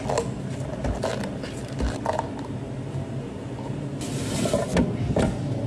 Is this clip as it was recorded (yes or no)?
yes